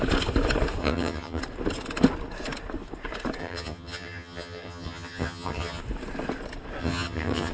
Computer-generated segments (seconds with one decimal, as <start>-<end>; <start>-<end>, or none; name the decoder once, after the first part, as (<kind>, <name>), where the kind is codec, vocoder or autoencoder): 0.8-1.4 (vocoder, HiFi-GAN); 3.4-5.8; 6.8-7.5